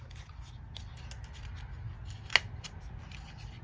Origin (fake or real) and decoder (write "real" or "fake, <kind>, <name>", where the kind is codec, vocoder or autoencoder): real